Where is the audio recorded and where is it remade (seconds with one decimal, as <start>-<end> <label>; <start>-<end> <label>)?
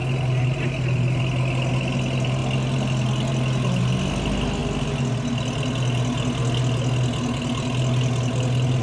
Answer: 0.0-8.8 recorded